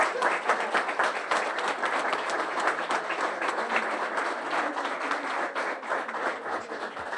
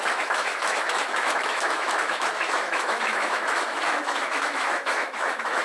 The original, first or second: first